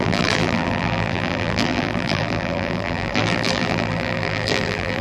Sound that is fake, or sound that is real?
fake